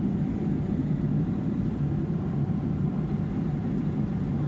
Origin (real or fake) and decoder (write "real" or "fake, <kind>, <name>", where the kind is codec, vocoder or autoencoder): real